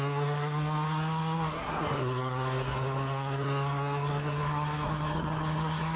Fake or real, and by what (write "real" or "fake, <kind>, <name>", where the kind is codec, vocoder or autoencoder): fake, codec, SNAC